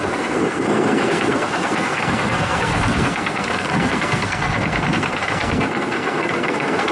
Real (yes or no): no